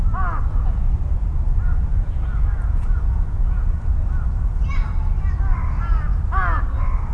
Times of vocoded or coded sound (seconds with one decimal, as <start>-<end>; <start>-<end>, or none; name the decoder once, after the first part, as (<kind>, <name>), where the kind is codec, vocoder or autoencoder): 1.9-3.8 (vocoder, Vocos)